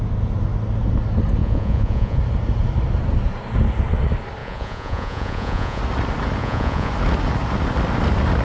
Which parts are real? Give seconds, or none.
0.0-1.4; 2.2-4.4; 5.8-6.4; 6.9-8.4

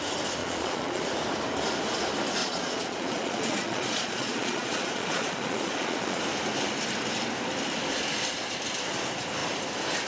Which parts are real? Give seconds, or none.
0.0-0.4; 1.1-2.4; 6.2-10.1